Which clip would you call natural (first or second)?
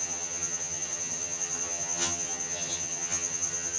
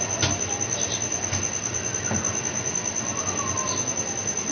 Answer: second